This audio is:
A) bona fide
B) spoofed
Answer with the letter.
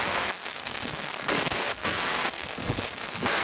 B